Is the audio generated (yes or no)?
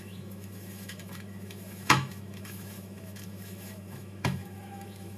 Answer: yes